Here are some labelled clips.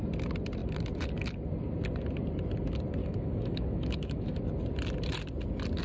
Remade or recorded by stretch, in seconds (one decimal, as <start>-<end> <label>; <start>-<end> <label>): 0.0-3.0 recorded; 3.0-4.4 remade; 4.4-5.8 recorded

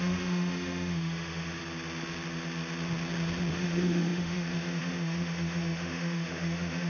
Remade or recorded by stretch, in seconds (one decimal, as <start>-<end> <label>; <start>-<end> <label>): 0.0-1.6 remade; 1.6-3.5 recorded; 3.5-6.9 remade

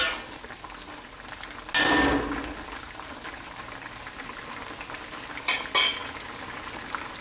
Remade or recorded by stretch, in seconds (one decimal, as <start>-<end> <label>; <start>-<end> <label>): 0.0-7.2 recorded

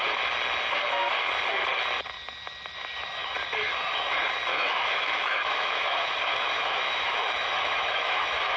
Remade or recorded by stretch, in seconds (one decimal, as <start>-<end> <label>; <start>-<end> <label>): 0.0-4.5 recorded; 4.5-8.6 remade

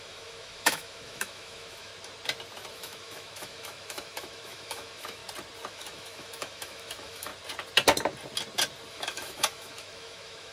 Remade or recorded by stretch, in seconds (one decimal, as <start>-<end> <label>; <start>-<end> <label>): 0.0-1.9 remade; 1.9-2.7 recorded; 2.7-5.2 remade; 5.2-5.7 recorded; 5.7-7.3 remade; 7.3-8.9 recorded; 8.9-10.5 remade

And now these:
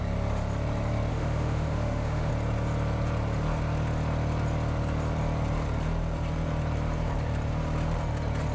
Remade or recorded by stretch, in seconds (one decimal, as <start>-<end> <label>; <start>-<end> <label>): 0.0-1.1 recorded; 1.1-2.3 remade; 2.3-8.5 recorded